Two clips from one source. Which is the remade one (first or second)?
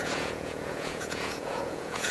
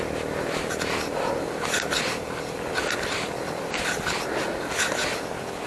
first